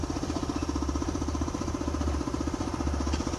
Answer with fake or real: real